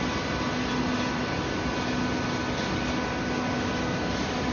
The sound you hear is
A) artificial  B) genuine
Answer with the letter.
B